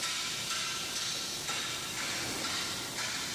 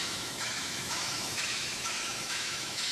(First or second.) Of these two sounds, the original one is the first